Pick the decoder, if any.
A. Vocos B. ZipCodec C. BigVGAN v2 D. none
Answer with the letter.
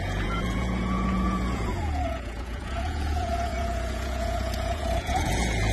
A